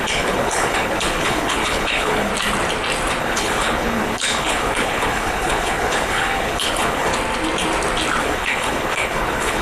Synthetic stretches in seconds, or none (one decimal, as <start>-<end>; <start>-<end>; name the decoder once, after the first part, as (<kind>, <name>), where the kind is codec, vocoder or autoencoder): 0.0-2.3 (codec, HILCodec); 3.2-7.1; 8.2-9.6